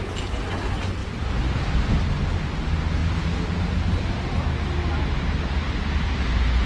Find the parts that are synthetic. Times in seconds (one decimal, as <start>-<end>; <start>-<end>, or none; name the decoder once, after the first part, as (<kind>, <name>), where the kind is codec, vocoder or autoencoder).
none